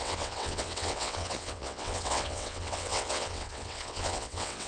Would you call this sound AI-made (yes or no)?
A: yes